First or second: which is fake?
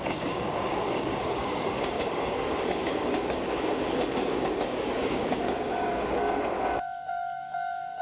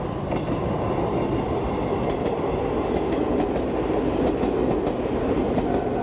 first